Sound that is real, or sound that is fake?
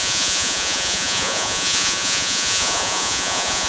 fake